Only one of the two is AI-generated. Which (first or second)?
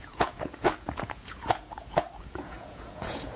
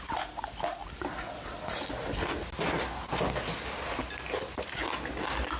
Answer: first